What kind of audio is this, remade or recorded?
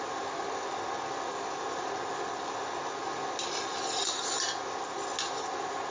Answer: recorded